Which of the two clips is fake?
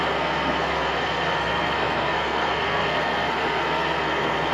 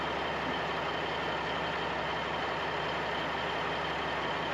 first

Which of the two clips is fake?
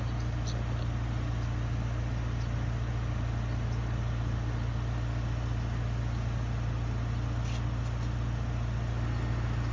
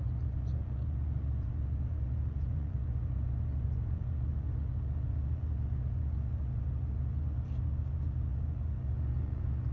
second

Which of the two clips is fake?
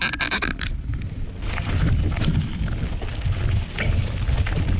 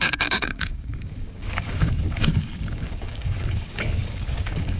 second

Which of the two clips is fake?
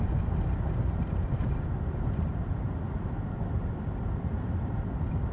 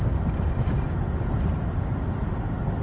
first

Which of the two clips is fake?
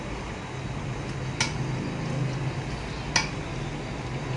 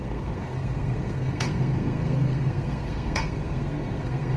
second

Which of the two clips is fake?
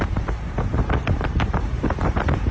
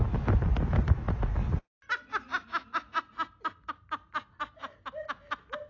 first